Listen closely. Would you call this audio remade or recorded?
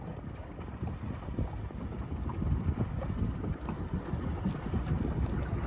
remade